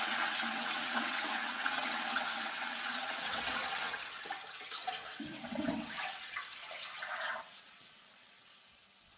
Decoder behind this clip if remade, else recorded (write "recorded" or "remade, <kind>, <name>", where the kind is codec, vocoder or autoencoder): remade, vocoder, WaveNeXt